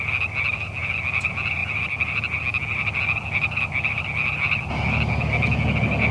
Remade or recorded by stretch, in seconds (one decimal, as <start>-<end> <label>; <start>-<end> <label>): 0.0-6.1 recorded